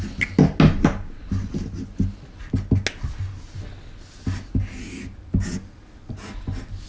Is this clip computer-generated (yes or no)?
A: no